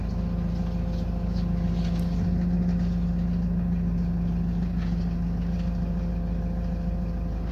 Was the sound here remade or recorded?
recorded